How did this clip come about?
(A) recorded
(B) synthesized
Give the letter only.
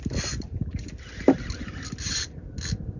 A